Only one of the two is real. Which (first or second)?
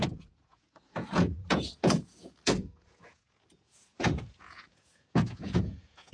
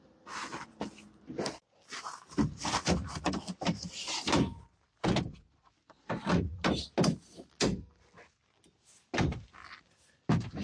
second